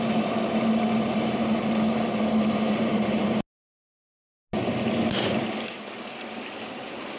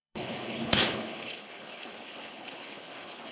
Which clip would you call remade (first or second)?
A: second